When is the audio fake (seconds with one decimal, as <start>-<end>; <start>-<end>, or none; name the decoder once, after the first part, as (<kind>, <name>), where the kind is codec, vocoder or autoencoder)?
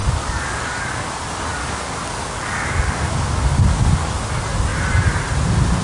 0.0-1.1 (codec, DAC); 1.6-4.3